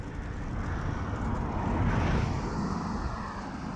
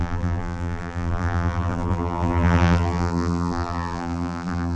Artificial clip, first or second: second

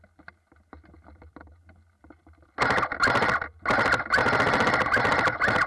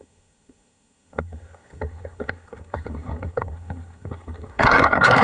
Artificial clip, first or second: second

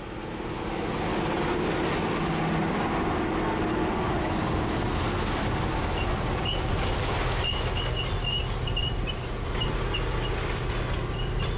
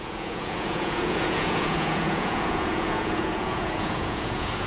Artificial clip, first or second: second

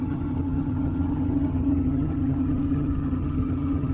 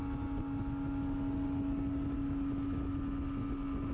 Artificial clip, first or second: first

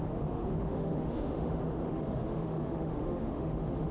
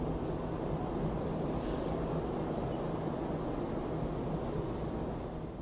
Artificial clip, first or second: first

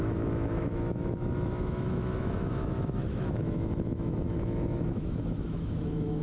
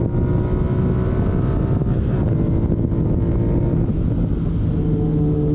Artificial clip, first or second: first